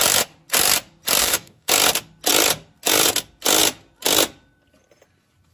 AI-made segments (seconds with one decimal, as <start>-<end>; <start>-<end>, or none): 1.2-1.7